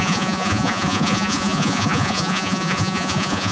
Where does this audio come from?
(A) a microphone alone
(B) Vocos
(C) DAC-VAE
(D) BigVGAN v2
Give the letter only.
B